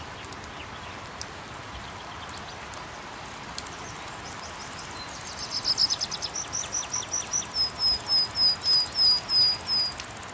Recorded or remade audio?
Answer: recorded